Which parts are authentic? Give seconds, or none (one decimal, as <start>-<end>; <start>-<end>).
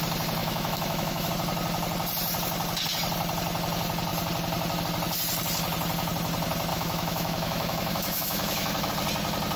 0.0-0.4; 1.3-6.7; 8.9-9.6